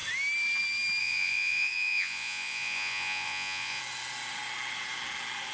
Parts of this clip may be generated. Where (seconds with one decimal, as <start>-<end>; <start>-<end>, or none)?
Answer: 1.0-3.8